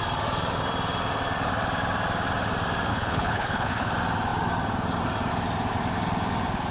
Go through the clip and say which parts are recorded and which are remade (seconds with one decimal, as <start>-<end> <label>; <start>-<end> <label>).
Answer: 0.0-2.9 recorded; 2.9-3.9 remade; 3.9-6.7 recorded